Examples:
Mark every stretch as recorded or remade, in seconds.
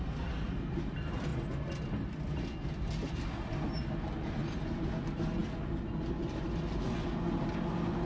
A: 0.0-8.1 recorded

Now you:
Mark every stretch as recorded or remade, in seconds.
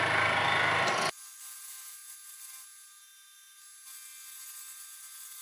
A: 0.0-2.0 remade; 2.0-5.4 recorded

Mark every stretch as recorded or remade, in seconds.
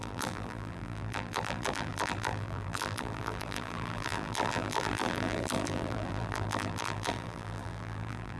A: 0.0-8.4 remade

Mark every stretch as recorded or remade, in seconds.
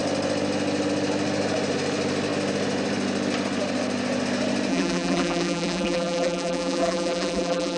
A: 0.0-4.7 recorded; 4.7-7.8 remade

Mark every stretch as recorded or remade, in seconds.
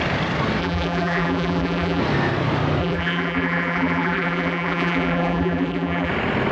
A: 0.0-0.6 recorded; 0.6-2.0 remade; 2.0-2.8 recorded; 2.8-6.1 remade; 6.1-6.5 recorded